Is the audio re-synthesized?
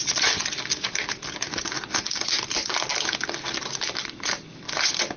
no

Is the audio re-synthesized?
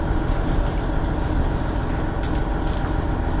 no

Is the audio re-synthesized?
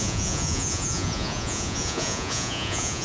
yes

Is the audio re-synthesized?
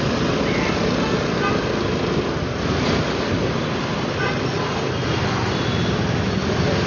no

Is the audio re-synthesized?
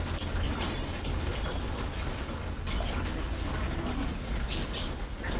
no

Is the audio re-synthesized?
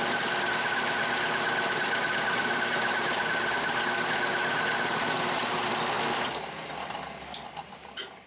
no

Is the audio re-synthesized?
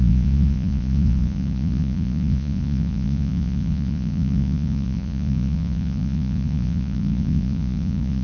yes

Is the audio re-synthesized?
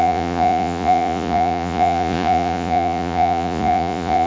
yes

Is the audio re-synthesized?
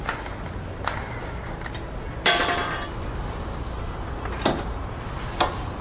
no